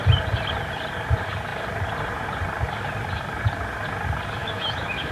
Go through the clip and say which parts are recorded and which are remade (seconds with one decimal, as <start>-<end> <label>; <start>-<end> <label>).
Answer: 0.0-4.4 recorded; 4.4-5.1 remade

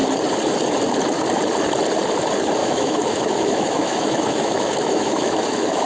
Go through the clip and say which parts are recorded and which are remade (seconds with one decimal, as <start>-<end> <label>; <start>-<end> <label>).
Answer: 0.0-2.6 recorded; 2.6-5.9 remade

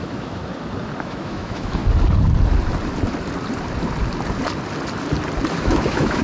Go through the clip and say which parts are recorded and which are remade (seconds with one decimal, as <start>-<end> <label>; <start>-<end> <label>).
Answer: 0.0-0.4 remade; 0.4-1.0 recorded; 1.0-1.8 remade; 1.8-5.5 recorded; 5.5-6.2 remade

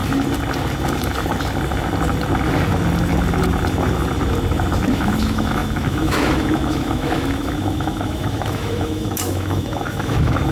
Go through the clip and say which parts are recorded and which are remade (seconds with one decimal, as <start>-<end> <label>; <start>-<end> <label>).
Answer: 0.0-4.9 recorded; 4.9-10.5 remade

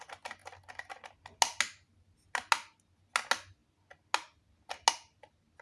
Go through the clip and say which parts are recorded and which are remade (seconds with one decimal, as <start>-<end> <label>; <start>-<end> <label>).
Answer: 0.0-5.6 recorded